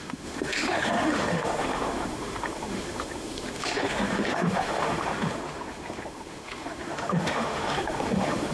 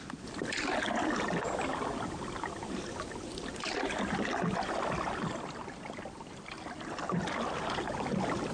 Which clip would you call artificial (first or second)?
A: first